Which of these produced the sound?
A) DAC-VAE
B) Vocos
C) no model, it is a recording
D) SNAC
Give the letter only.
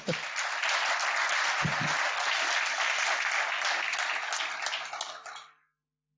C